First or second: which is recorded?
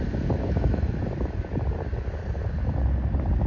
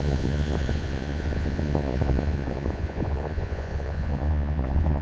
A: first